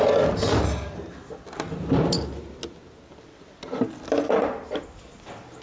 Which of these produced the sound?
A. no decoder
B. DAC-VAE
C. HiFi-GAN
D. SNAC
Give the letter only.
A